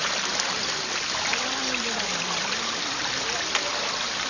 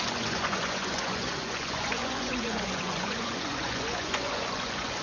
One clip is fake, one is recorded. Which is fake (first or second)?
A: second